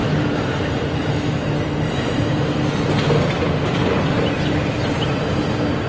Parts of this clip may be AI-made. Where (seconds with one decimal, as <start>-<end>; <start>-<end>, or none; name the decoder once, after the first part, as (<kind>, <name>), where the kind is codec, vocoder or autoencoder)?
0.0-2.5 (vocoder, BigVGAN v2)